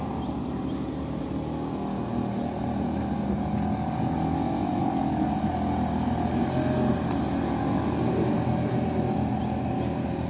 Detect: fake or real real